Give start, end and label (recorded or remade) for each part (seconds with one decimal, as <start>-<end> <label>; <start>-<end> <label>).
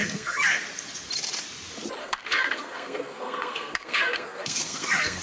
0.0-0.6 remade; 0.6-2.0 recorded; 2.0-5.2 remade